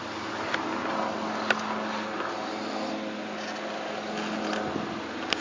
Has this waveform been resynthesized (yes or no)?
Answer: no